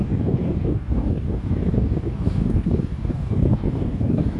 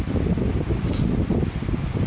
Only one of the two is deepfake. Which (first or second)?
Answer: first